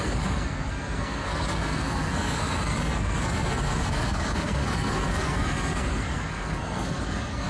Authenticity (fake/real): fake